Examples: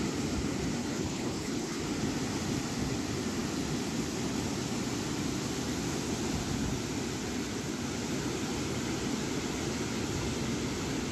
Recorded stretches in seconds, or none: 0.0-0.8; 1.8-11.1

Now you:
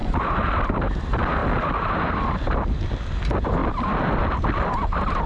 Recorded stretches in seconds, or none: 0.0-5.3